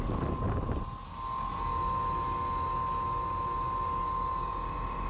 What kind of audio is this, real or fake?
real